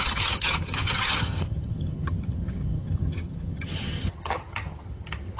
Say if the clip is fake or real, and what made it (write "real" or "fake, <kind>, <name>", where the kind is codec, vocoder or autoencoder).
fake, vocoder, HiFi-GAN